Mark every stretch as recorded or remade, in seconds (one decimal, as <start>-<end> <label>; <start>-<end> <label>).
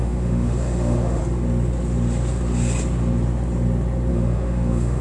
0.0-1.2 remade; 1.2-4.1 recorded; 4.1-5.0 remade